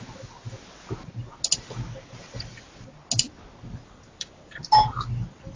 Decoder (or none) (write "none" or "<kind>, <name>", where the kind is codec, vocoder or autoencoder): none